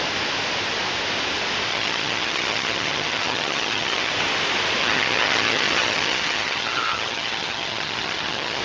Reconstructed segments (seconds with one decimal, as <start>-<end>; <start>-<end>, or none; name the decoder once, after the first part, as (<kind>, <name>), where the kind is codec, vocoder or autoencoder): 1.7-4.1 (vocoder, HiFi-GAN); 4.8-8.6